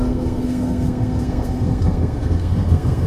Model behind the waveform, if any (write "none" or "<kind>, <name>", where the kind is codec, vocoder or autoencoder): codec, SNAC